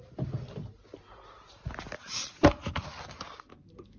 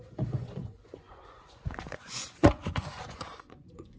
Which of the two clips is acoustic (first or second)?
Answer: first